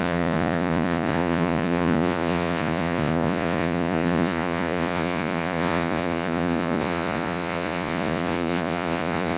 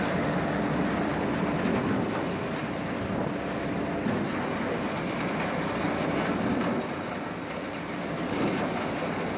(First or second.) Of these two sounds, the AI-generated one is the first